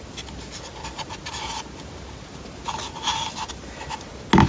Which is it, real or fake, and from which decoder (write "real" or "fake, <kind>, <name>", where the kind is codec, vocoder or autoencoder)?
real